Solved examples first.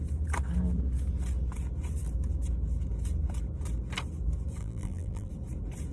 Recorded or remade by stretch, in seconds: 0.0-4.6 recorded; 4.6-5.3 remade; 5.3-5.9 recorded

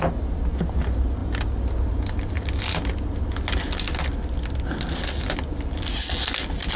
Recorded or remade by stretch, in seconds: 0.0-6.8 recorded